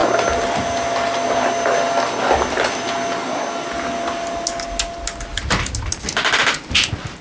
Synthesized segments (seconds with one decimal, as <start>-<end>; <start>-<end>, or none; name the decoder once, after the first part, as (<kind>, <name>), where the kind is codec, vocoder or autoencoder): none